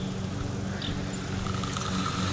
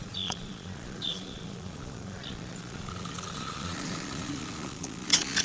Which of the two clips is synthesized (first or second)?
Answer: second